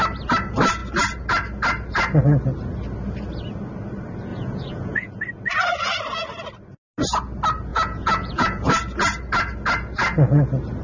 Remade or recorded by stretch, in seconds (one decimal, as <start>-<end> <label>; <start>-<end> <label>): 0.0-4.3 recorded; 4.3-5.2 remade; 5.2-7.7 recorded; 7.7-8.7 remade; 8.7-10.8 recorded